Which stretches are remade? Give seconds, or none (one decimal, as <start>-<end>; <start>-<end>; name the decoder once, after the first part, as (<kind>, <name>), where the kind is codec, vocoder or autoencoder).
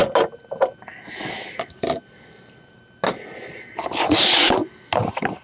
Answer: 4.0-4.5 (vocoder, Vocos)